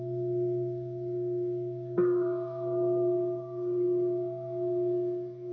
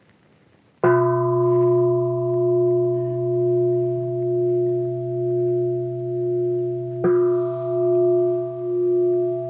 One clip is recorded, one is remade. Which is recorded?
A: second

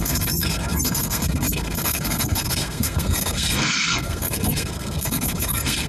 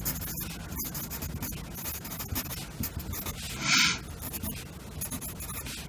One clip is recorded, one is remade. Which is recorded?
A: second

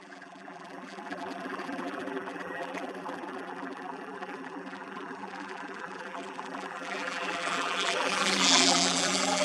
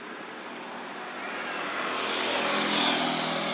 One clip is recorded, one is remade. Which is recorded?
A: second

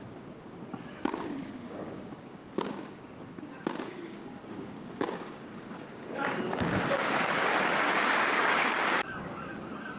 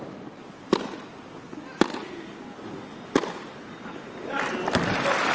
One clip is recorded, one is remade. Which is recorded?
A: second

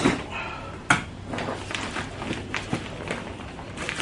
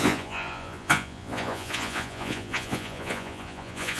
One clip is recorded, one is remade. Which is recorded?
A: first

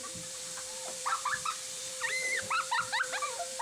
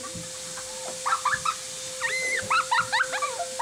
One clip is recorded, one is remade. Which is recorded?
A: second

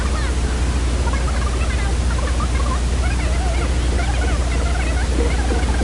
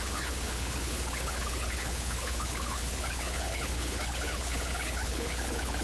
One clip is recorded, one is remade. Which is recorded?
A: first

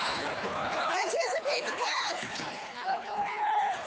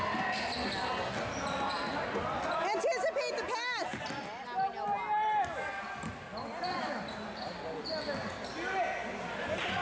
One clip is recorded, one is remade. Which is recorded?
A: second